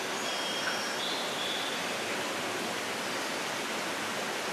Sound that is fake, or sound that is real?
real